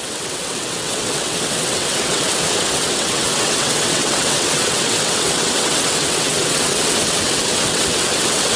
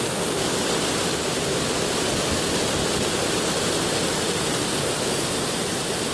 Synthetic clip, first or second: first